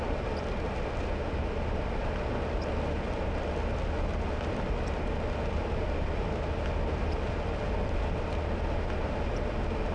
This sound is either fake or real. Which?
real